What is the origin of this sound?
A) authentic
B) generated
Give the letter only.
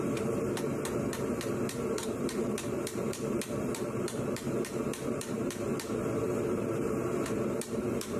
B